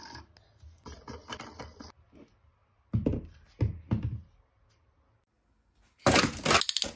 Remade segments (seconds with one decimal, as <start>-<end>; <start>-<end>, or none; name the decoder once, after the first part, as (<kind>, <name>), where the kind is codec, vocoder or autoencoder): none